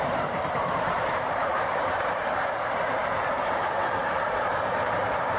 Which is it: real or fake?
fake